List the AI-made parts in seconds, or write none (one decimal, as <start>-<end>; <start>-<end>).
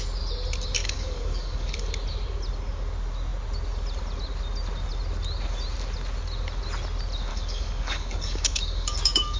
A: 0.8-1.9; 7.3-9.4